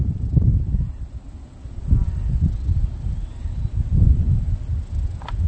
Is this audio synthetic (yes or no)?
no